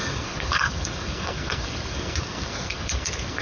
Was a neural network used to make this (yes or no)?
yes